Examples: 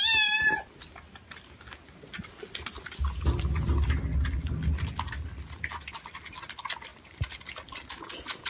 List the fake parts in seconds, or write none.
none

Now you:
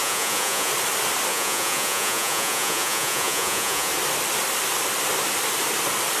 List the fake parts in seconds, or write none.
0.0-0.7 (vocoder, Vocos); 1.3-3.9

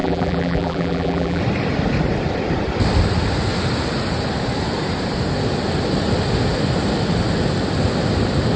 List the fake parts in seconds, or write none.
0.0-1.4 (vocoder, BigVGAN v2)

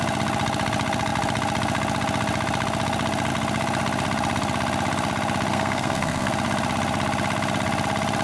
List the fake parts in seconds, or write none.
5.5-6.3 (codec, SNAC)

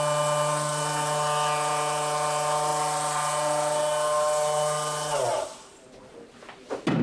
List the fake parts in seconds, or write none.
none